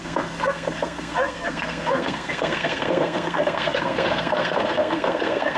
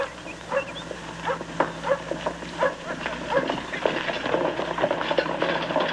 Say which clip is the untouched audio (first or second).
second